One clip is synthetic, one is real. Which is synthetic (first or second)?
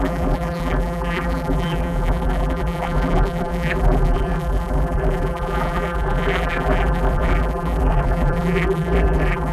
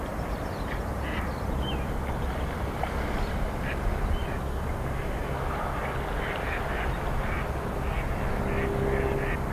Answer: first